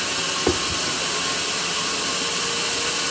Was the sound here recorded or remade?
recorded